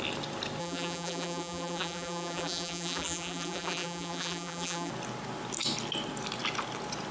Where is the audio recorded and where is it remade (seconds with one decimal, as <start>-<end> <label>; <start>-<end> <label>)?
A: 0.0-0.6 recorded; 0.6-4.9 remade; 4.9-7.1 recorded